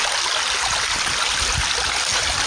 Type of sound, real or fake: real